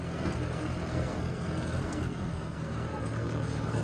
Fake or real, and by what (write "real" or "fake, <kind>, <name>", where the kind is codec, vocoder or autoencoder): fake, codec, SNAC